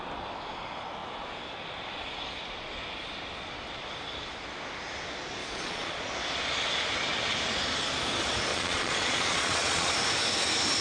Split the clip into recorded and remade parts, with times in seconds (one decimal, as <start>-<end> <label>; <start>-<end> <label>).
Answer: 0.0-5.4 recorded; 5.4-6.0 remade; 6.0-8.5 recorded; 8.5-9.9 remade; 9.9-10.8 recorded

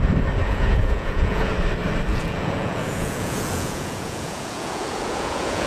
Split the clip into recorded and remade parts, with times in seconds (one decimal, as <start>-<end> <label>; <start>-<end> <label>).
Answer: 0.0-0.4 recorded; 0.4-1.5 remade; 1.5-2.1 recorded; 2.1-5.7 remade

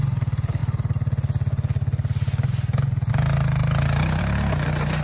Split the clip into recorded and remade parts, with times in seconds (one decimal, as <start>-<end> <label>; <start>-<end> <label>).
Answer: 0.0-5.0 recorded

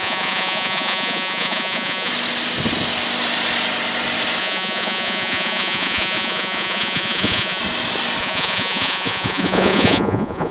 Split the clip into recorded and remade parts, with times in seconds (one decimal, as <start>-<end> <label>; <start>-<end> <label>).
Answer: 0.0-2.1 remade; 2.1-4.4 recorded; 4.4-7.6 remade; 7.6-8.2 recorded; 8.2-10.5 remade

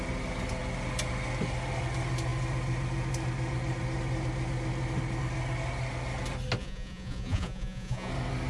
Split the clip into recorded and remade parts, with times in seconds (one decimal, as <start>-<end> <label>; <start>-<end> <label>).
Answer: 0.0-6.6 recorded; 6.6-8.1 remade; 8.1-8.5 recorded

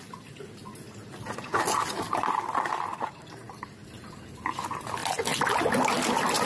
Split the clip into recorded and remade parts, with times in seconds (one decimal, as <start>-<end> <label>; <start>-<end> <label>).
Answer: 0.0-6.5 recorded

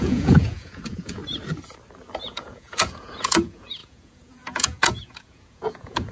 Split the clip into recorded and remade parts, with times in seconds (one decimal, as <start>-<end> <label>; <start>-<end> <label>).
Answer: 0.0-1.2 remade; 1.2-2.2 recorded; 2.2-6.1 remade